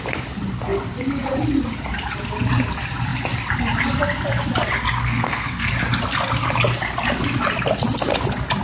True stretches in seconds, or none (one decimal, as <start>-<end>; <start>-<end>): 0.0-5.0; 5.7-8.6